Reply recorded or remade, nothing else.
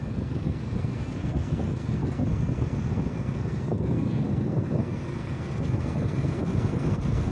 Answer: remade